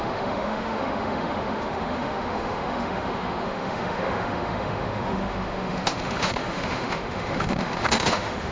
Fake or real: fake